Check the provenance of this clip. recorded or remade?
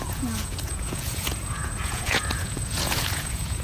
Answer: remade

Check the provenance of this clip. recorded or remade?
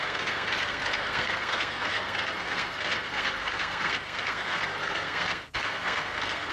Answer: remade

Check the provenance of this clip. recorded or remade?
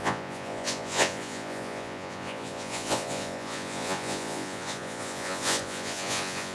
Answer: remade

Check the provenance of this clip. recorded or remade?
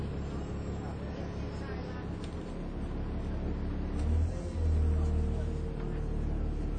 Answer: recorded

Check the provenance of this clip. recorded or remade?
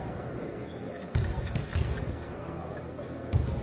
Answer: remade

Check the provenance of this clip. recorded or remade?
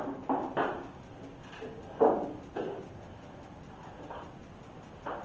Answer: recorded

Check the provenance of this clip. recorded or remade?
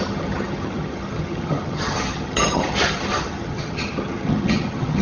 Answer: remade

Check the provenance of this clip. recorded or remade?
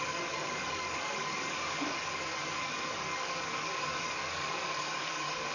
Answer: remade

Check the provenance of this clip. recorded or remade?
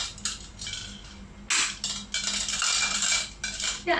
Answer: recorded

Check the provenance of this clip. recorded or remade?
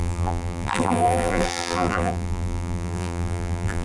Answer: remade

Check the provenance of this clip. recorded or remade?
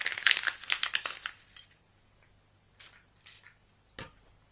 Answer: recorded